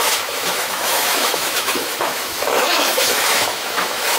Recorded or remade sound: remade